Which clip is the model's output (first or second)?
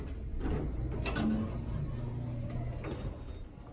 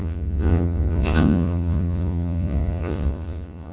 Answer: second